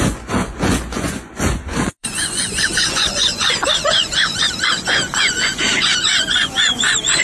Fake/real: fake